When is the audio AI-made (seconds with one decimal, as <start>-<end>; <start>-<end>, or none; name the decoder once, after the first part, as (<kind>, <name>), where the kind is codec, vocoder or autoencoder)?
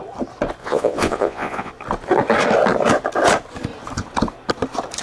0.6-1.7 (vocoder, Vocos)